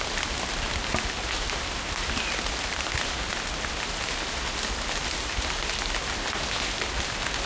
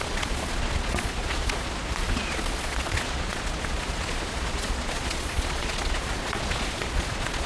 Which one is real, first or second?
first